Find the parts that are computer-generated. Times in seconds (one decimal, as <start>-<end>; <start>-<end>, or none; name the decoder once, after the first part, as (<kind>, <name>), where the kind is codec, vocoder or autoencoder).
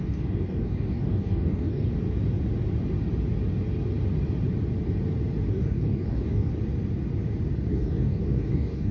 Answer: 0.0-1.9 (codec, DAC); 5.5-6.5; 7.7-8.9